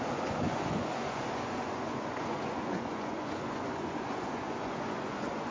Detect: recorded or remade remade